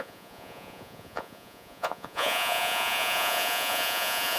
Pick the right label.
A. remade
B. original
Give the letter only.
A